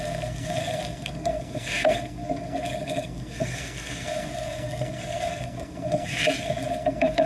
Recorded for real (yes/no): no